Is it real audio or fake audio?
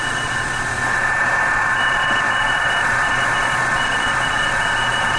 fake